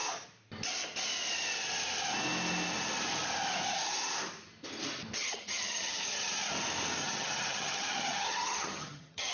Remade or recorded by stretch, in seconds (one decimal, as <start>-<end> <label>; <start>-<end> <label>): 0.0-5.2 recorded; 5.2-6.3 remade; 6.3-7.0 recorded; 7.0-9.3 remade